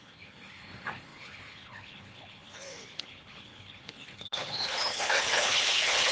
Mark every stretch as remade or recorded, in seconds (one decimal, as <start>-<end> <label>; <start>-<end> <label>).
0.0-6.1 remade